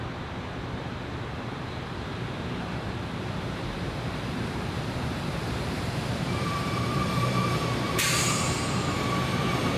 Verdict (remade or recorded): remade